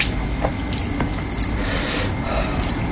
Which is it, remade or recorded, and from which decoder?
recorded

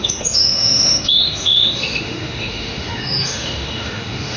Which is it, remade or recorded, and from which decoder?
remade, autoencoder, DAC-VAE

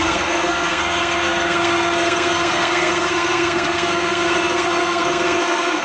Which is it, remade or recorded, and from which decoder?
remade, codec, SNAC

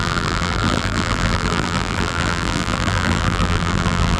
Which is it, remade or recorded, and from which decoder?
remade, vocoder, BigVGAN v2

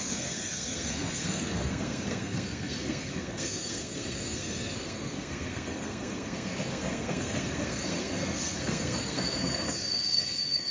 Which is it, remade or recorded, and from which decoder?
remade, codec, SNAC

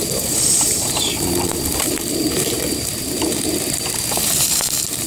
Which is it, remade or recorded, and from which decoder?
remade, vocoder, BigVGAN v2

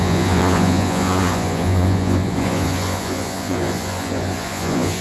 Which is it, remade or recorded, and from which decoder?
remade, vocoder, Vocos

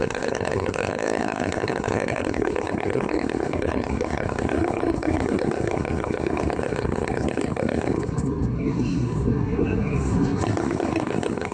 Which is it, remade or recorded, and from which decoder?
remade, codec, SNAC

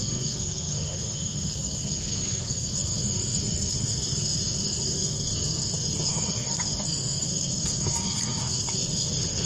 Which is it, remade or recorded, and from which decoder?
remade, codec, SNAC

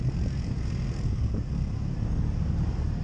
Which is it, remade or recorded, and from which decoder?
recorded